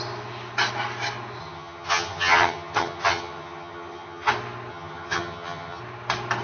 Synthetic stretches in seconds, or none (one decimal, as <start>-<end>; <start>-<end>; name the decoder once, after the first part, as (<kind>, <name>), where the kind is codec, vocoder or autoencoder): 1.4-4.3 (vocoder, HiFi-GAN); 4.7-5.8